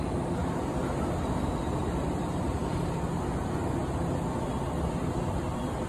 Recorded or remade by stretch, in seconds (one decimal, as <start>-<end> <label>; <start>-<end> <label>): 0.0-5.9 recorded